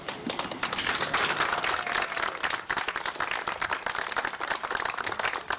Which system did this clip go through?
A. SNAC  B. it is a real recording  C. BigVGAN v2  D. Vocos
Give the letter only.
B